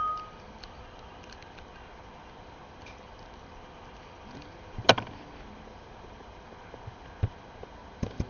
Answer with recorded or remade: recorded